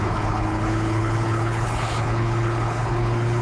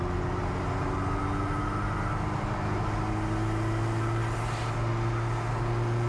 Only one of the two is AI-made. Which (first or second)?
first